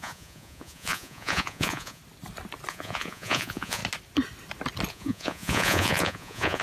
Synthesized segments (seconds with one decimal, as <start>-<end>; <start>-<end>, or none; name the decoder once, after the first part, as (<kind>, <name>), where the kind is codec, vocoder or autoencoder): 0.0-2.0 (vocoder, Vocos); 2.7-3.8; 4.9-6.6